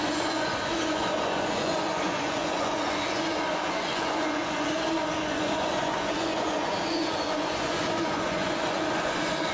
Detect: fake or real fake